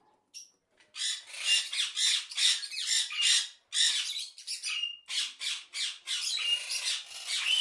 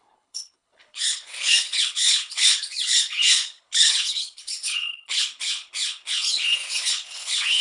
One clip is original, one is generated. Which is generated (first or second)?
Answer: second